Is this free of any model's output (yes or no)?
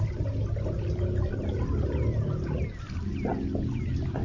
yes